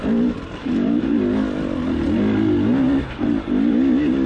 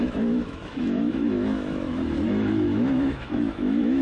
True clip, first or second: first